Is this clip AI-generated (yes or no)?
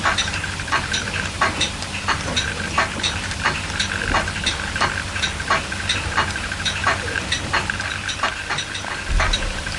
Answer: yes